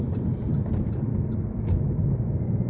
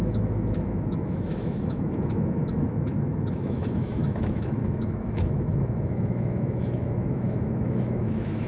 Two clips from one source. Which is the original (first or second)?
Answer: first